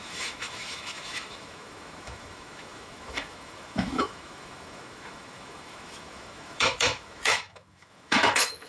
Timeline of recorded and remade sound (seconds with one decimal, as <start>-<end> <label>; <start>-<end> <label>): 0.0-8.7 remade